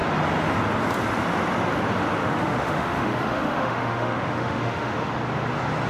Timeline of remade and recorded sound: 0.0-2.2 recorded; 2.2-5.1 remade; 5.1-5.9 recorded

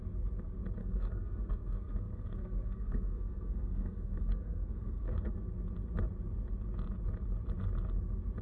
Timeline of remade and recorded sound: 0.0-0.8 recorded; 0.8-5.5 remade; 5.5-8.4 recorded

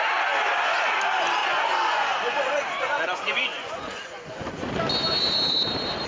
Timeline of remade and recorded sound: 0.0-1.4 recorded; 1.4-4.7 remade; 4.7-6.1 recorded

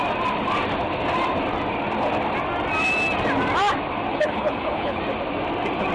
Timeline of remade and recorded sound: 0.0-4.1 recorded; 4.1-5.0 remade; 5.0-5.9 recorded